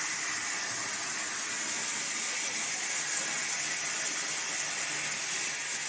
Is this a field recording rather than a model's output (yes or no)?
yes